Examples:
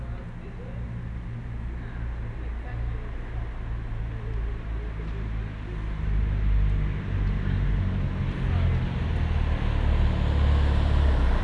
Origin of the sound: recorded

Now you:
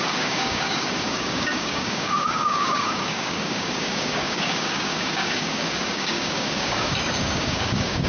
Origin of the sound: remade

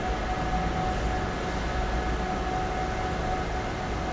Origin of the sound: recorded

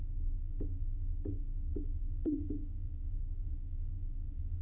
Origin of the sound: remade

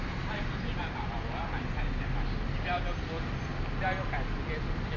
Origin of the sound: recorded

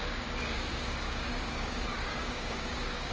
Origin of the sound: remade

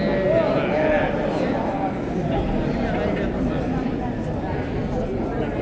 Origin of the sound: recorded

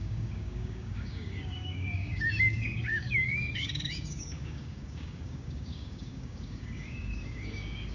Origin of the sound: remade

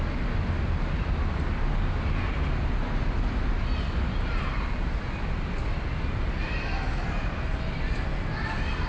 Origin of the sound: recorded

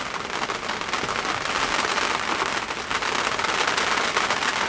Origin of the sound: recorded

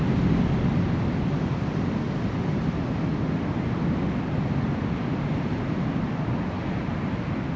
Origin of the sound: recorded